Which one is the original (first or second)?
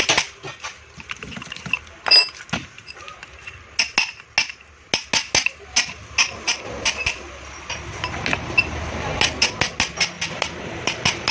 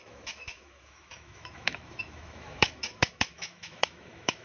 first